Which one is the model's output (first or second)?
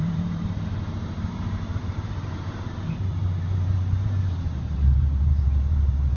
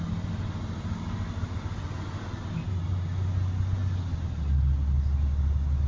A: first